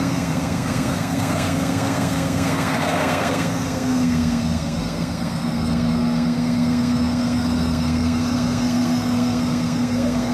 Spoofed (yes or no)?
yes